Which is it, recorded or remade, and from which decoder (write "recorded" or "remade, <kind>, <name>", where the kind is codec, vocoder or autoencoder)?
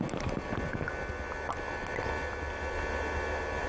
recorded